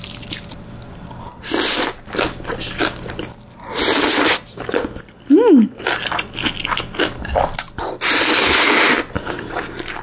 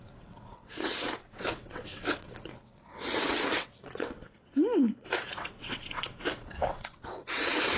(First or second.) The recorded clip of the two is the first